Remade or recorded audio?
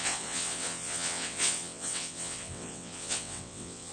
remade